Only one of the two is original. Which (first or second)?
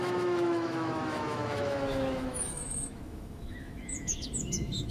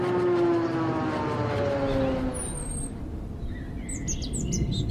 second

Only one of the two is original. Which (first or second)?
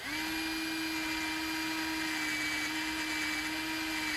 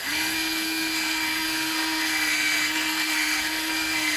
first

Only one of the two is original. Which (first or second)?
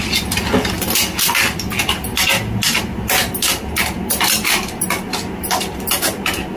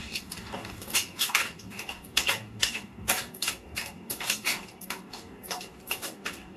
first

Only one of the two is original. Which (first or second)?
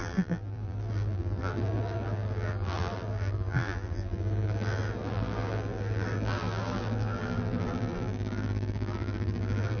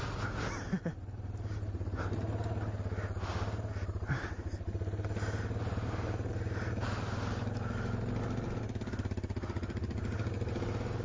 second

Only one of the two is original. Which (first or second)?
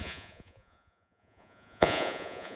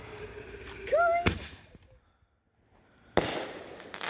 second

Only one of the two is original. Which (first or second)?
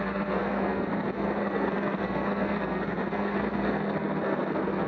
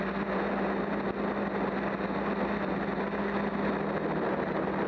second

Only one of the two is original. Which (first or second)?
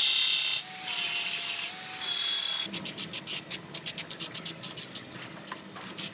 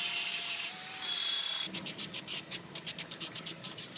first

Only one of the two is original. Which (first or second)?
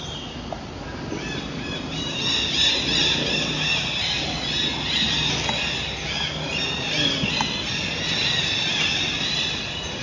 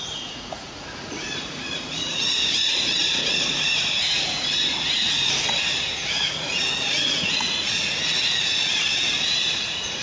first